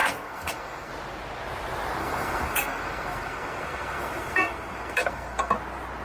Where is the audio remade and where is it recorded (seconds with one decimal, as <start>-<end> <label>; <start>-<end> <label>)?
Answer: 0.0-0.9 remade; 0.9-2.0 recorded; 2.0-5.5 remade; 5.5-6.0 recorded